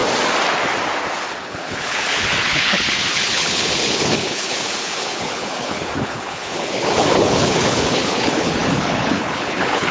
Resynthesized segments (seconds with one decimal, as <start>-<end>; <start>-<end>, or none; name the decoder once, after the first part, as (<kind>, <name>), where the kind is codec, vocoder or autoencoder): 1.4-9.9 (codec, HILCodec)